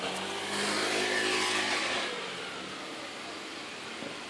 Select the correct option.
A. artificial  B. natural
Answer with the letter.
B